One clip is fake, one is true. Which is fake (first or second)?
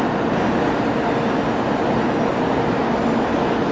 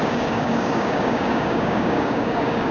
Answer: second